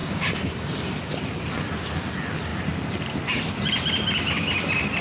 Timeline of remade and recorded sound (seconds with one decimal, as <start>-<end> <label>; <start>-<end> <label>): 0.0-0.9 remade; 0.9-5.0 recorded